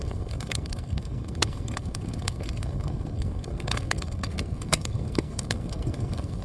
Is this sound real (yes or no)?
no